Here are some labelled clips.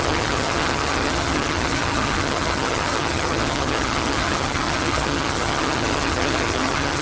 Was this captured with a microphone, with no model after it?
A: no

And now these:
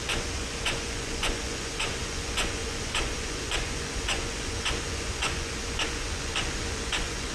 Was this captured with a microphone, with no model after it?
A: no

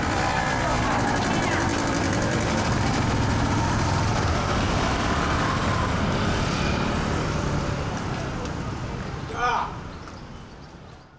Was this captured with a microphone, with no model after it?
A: no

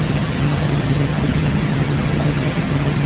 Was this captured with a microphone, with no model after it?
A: no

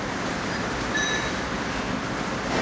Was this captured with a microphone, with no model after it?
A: yes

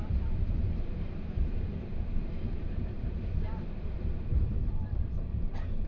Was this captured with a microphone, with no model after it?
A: no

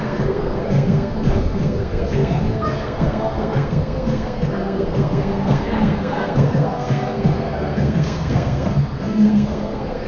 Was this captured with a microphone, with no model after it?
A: no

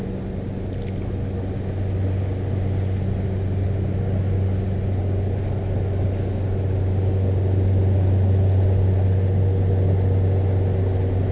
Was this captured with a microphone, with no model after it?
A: yes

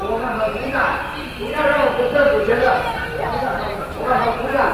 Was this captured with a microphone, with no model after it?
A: no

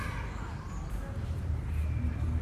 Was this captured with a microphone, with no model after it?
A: no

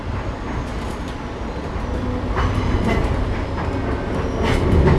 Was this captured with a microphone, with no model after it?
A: yes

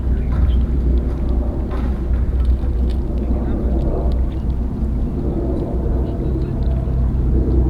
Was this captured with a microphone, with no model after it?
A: yes